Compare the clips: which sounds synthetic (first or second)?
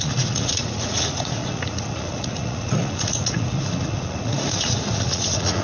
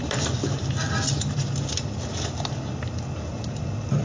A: first